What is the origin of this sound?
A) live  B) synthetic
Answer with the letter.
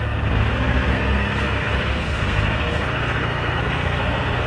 B